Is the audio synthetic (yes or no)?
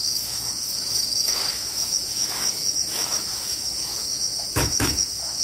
yes